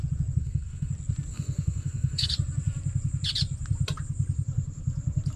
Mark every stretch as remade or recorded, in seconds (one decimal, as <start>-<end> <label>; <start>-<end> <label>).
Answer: 0.0-0.4 recorded; 0.4-0.9 remade; 0.9-1.3 recorded; 1.3-2.3 remade; 2.3-5.4 recorded